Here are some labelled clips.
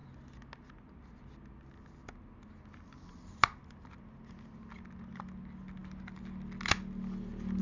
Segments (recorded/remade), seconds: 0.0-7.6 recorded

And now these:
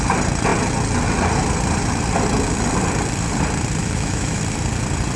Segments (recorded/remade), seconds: 0.0-3.8 recorded; 3.8-4.4 remade; 4.4-5.2 recorded